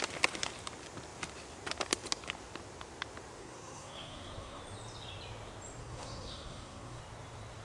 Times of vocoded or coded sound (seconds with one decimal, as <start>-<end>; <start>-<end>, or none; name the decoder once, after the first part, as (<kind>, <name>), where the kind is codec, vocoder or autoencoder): 3.4-4.6 (codec, SNAC); 5.8-7.0

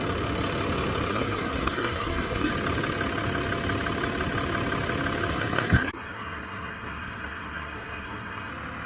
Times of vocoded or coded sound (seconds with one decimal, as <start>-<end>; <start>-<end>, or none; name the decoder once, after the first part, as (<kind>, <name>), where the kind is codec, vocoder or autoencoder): 1.1-2.5 (codec, SNAC); 5.3-8.5

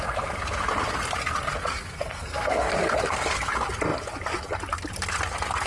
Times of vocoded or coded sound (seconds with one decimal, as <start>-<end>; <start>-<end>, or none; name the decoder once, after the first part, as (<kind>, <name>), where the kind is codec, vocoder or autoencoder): 1.6-2.7 (codec, SNAC)

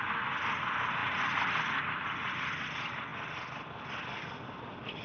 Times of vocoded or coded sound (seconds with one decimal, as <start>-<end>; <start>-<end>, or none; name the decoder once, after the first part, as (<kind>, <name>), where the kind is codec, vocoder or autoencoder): none

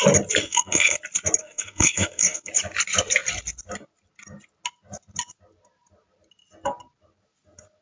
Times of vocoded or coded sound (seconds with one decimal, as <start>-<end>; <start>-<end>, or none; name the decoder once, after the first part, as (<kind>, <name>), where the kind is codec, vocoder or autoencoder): 0.4-1.0 (codec, SNAC); 1.4-2.5